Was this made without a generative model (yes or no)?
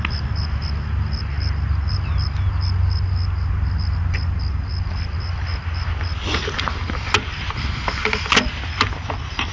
yes